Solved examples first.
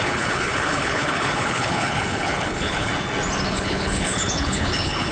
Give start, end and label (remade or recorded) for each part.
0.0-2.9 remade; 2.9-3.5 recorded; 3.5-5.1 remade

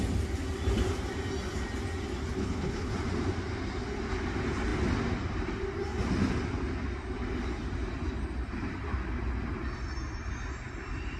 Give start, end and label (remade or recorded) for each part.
0.0-2.4 recorded; 2.4-2.9 remade; 2.9-11.2 recorded

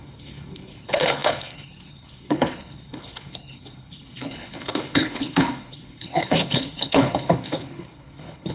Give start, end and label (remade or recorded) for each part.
0.0-8.5 remade

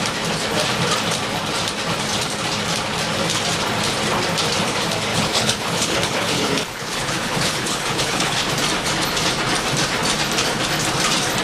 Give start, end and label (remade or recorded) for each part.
0.0-5.1 recorded; 5.1-8.5 remade; 8.5-11.4 recorded

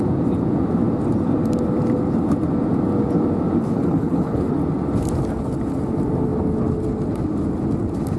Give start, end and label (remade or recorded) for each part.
0.0-3.6 recorded; 3.6-4.5 remade; 4.5-8.2 recorded

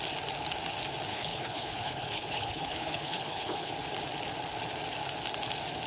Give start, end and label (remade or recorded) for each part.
0.0-1.1 recorded; 1.1-3.7 remade; 3.7-5.9 recorded

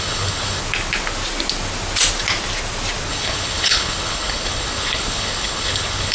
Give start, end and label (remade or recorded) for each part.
0.0-0.6 remade; 0.6-3.1 recorded; 3.1-6.1 remade

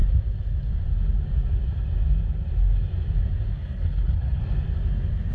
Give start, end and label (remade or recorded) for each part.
0.0-3.6 recorded; 3.6-4.4 remade; 4.4-5.3 recorded